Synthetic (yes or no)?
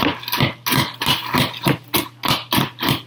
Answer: no